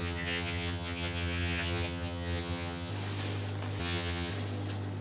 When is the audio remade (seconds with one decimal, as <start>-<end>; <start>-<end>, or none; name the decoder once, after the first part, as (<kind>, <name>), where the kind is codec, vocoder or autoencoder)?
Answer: 0.0-2.9 (vocoder, HiFi-GAN); 3.8-4.3